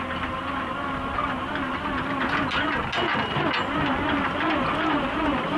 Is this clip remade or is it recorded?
recorded